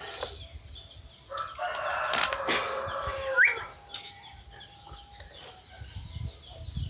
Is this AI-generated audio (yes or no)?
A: no